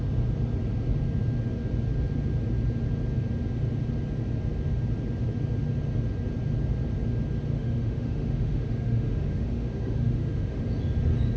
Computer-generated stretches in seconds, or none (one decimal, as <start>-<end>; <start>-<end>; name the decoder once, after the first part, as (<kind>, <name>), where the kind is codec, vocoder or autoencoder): 7.5-10.7 (autoencoder, DAC-VAE)